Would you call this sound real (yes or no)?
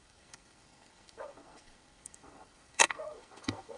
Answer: no